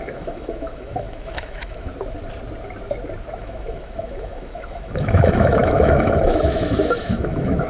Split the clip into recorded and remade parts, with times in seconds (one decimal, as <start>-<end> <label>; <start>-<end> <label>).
0.0-1.9 remade; 1.9-3.4 recorded; 3.4-7.7 remade